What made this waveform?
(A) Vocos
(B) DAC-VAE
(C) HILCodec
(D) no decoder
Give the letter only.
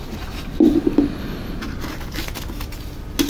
D